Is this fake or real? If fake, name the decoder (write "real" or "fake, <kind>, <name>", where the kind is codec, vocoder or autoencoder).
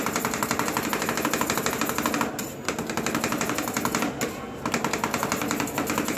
real